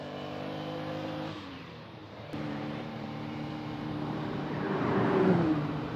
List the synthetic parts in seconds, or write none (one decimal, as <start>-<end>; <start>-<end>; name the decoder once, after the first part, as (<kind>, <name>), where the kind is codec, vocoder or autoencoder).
0.0-6.0 (vocoder, BigVGAN v2)